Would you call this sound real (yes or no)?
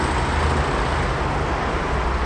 yes